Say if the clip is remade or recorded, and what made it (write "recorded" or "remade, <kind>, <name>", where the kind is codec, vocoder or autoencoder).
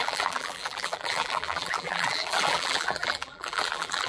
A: remade, vocoder, BigVGAN v2